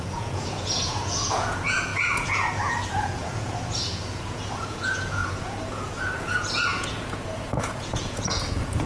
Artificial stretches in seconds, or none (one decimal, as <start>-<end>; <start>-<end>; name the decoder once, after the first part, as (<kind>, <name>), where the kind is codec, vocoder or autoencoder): 0.0-8.9 (vocoder, Vocos)